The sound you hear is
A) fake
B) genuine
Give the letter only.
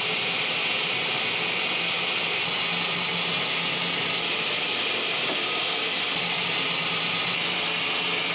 B